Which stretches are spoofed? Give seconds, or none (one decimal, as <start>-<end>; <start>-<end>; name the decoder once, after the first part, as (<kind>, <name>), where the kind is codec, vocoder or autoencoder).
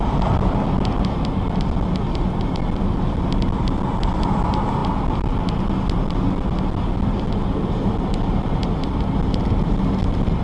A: none